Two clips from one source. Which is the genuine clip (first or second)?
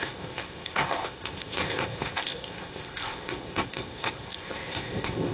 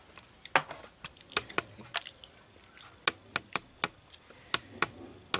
second